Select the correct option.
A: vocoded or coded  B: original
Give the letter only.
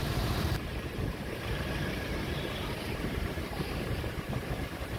A